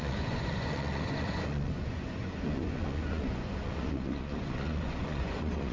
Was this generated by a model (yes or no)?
yes